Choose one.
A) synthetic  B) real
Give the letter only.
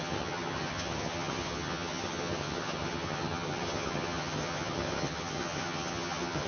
A